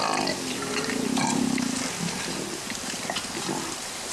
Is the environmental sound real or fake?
real